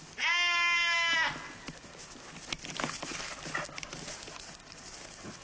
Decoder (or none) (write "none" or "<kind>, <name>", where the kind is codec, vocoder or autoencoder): none